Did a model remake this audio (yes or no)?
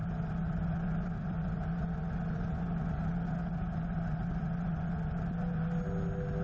no